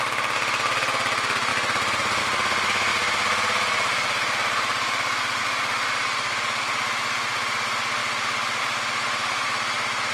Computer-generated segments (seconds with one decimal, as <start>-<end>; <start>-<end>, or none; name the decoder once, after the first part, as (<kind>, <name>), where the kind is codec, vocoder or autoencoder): 8.0-8.6 (vocoder, BigVGAN v2)